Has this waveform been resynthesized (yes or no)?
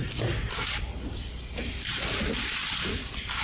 no